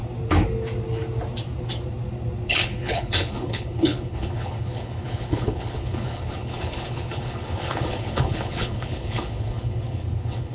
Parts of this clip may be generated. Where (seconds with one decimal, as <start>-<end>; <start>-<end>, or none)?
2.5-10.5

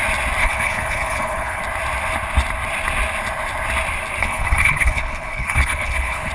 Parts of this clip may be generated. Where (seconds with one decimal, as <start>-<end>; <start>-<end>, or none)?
0.4-1.6; 4.2-6.3

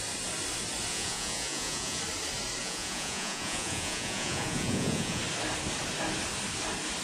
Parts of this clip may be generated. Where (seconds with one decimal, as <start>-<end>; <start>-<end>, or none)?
0.9-2.0; 2.6-5.2